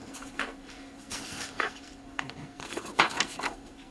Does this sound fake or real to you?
fake